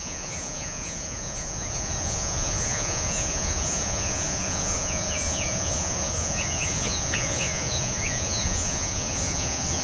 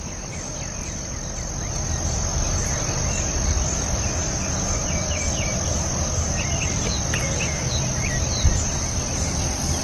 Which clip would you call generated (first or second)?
first